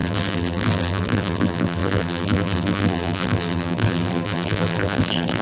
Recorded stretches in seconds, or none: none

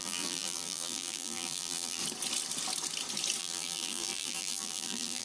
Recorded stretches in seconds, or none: 2.0-3.4